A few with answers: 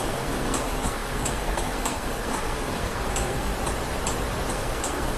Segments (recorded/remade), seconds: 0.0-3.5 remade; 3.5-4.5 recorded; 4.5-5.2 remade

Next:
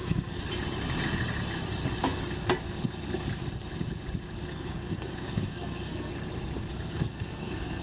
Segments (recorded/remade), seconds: 0.0-0.5 remade; 0.5-4.5 recorded; 4.5-6.1 remade; 6.1-6.7 recorded; 6.7-7.8 remade

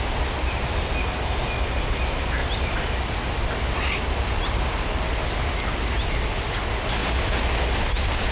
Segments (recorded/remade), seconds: 0.0-8.3 recorded